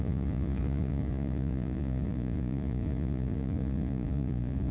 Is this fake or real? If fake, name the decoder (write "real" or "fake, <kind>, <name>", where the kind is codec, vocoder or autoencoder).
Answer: fake, vocoder, Vocos